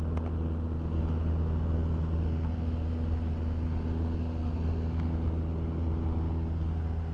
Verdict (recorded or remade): recorded